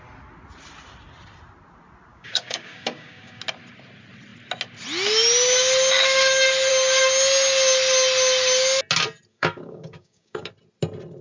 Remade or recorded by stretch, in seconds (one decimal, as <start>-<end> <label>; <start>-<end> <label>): 0.0-2.1 recorded; 2.1-3.4 remade; 3.4-9.3 recorded; 9.3-10.5 remade; 10.5-11.2 recorded